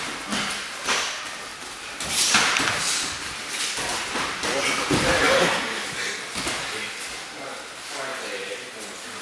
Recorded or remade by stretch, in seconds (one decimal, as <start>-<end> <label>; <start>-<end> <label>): 0.0-1.5 recorded; 1.5-3.6 remade; 3.6-8.1 recorded; 8.1-8.7 remade; 8.7-9.2 recorded